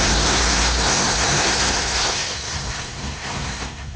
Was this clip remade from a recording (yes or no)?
yes